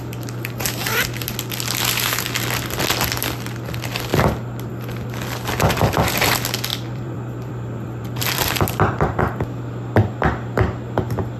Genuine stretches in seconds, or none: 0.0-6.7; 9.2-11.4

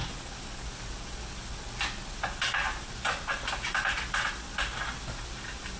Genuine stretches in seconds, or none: 0.0-5.8

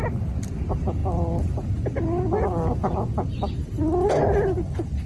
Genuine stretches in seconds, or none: 0.0-5.1